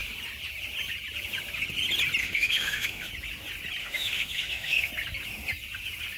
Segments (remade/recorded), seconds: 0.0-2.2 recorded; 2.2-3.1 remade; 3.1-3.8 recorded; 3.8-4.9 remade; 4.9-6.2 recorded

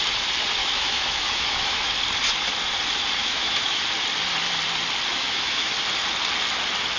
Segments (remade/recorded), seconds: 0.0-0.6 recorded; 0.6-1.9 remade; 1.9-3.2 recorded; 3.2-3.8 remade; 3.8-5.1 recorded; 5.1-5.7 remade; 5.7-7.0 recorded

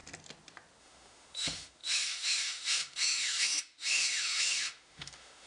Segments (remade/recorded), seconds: 0.0-0.8 recorded; 0.8-5.5 remade

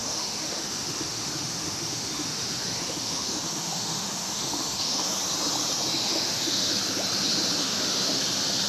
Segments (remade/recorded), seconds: 0.0-5.1 remade; 5.1-6.0 recorded; 6.0-6.7 remade; 6.7-7.6 recorded; 7.6-8.2 remade; 8.2-8.7 recorded

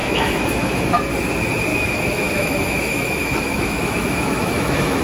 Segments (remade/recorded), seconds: 0.0-0.9 remade; 0.9-1.7 recorded; 1.7-5.0 remade

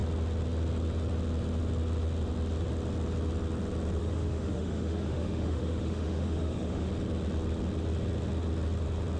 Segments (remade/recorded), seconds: 0.0-4.0 recorded; 4.0-6.9 remade; 6.9-9.2 recorded

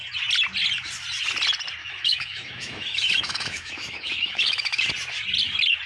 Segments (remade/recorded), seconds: 0.0-1.8 recorded; 1.8-4.9 remade; 4.9-5.9 recorded

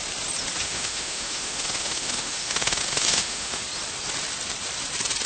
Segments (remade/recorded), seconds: 0.0-0.6 recorded; 0.6-3.6 remade; 3.6-5.3 recorded